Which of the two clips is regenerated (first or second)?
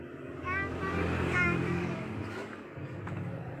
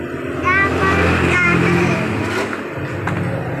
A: first